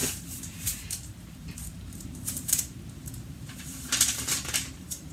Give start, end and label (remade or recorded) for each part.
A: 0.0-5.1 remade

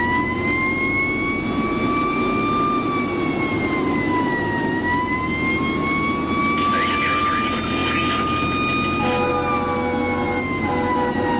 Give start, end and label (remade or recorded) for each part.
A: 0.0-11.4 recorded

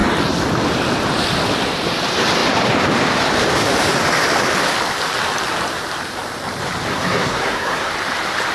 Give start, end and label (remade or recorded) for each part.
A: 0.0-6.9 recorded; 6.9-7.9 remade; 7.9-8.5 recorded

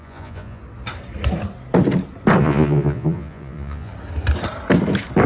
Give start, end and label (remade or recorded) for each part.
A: 0.0-0.6 remade; 0.6-2.4 recorded; 2.4-3.9 remade; 3.9-5.3 recorded

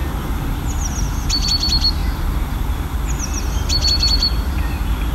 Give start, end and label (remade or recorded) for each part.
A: 0.0-5.1 recorded

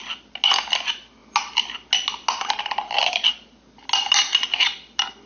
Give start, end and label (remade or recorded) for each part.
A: 0.0-5.3 recorded

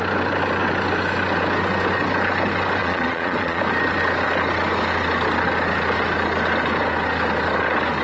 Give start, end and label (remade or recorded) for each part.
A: 0.0-2.8 recorded; 2.8-3.6 remade; 3.6-8.0 recorded

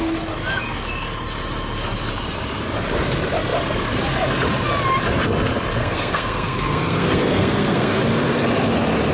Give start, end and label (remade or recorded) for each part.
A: 0.0-5.8 recorded; 5.8-8.0 remade; 8.0-9.1 recorded